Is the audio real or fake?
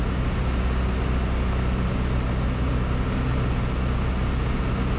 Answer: real